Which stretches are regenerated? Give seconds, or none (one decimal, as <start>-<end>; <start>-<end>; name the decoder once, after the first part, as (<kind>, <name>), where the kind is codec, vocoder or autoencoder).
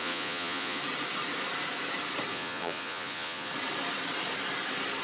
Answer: 0.0-0.8 (vocoder, Vocos); 2.3-3.5